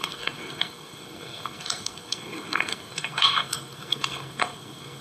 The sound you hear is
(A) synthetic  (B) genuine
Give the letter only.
A